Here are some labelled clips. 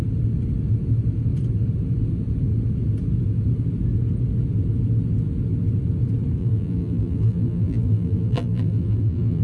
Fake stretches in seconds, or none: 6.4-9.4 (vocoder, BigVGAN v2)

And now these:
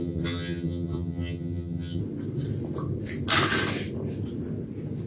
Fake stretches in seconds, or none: 0.0-2.0 (vocoder, HiFi-GAN)

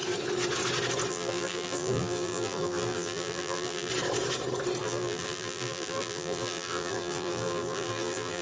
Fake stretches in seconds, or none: 1.1-3.9 (vocoder, BigVGAN v2); 4.8-8.4